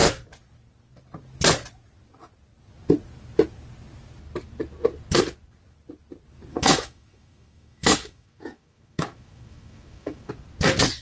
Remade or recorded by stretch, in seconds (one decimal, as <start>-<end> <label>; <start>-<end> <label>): 0.0-6.5 recorded; 6.5-10.3 remade; 10.3-11.0 recorded